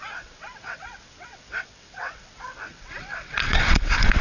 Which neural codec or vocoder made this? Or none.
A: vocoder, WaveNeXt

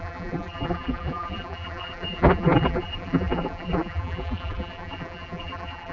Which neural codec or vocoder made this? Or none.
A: vocoder, BigVGAN v2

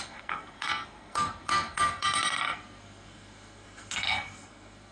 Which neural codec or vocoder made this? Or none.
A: codec, SNAC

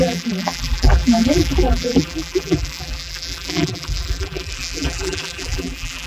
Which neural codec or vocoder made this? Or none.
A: vocoder, BigVGAN v2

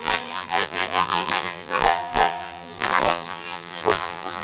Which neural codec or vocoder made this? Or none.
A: vocoder, BigVGAN v2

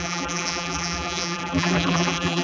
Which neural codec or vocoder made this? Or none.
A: vocoder, BigVGAN v2